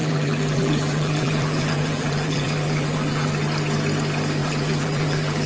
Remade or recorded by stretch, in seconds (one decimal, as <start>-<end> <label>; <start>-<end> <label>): 0.0-3.3 remade; 3.3-4.4 recorded; 4.4-5.5 remade